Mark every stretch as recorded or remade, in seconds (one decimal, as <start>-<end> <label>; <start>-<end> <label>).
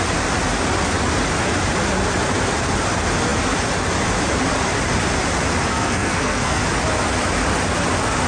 0.0-5.7 recorded; 5.7-6.6 remade; 6.6-8.3 recorded